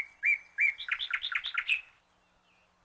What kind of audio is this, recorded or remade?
recorded